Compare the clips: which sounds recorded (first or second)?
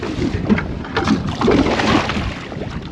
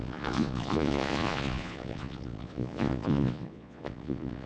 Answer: first